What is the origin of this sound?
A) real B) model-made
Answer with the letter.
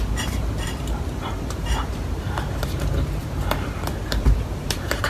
B